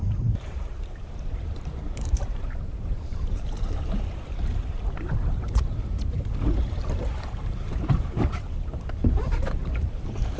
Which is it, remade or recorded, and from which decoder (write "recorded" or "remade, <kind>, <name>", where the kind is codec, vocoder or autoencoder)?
remade, vocoder, BigVGAN v2